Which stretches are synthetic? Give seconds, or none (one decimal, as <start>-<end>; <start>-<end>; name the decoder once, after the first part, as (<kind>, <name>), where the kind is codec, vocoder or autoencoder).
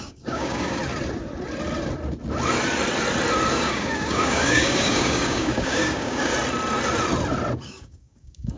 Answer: 0.0-0.8 (codec, DAC); 3.5-6.3; 7.6-8.6